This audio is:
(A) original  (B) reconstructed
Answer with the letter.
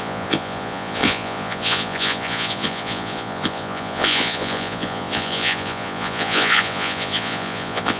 B